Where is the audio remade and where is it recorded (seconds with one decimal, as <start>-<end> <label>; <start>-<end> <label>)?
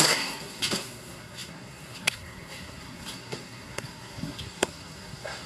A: 0.0-5.5 remade